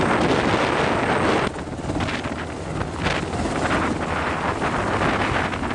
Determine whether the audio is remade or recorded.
recorded